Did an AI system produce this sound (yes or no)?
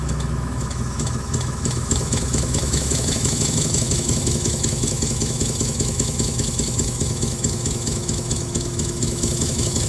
yes